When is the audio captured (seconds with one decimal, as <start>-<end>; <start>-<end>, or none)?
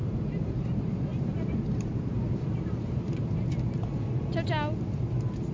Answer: 0.6-1.1; 3.3-5.5